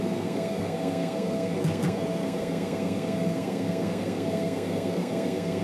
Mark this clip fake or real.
fake